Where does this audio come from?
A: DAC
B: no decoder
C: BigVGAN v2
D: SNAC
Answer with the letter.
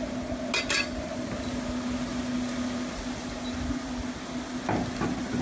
B